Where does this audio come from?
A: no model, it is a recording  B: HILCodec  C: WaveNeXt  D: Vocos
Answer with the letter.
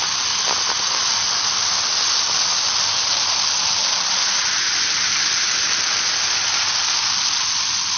A